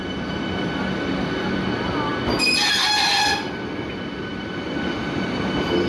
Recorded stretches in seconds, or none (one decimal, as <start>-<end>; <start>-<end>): 0.0-4.3; 5.0-5.9